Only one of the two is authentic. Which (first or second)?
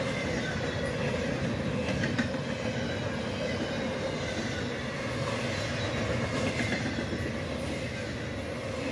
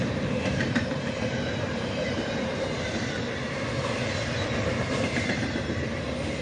first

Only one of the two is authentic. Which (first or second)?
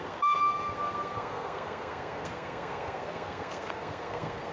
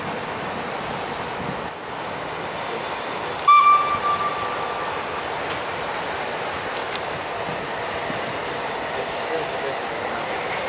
second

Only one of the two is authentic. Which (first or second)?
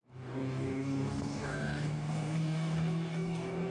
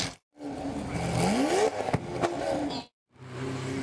second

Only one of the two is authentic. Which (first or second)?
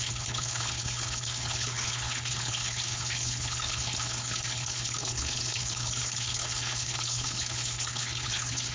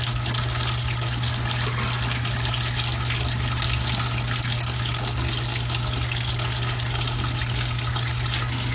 second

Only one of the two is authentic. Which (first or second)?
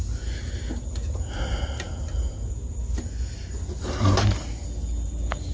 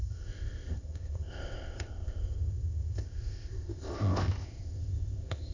first